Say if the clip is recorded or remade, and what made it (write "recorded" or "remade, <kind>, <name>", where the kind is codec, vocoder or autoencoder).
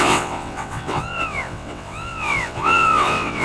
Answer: remade, vocoder, WaveNeXt